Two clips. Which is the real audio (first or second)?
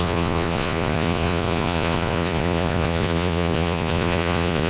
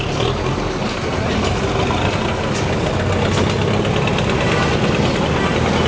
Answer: second